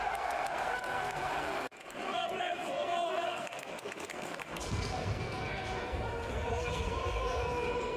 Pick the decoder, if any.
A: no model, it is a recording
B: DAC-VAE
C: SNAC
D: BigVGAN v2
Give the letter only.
C